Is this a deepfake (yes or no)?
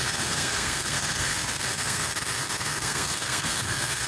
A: yes